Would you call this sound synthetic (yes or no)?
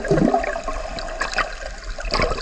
yes